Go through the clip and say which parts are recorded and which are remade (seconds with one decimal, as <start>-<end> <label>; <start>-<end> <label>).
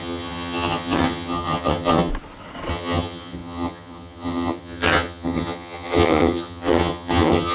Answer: 0.0-2.1 remade; 2.1-2.7 recorded; 2.7-7.5 remade